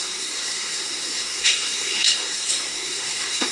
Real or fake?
fake